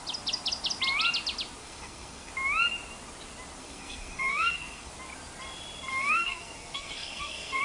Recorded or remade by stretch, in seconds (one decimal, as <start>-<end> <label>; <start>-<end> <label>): 0.0-1.6 recorded; 1.6-2.3 remade; 2.3-3.6 recorded; 3.6-4.9 remade; 4.9-5.9 recorded; 5.9-7.6 remade